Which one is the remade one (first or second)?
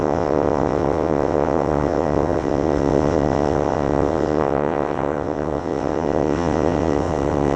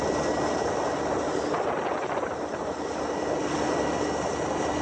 first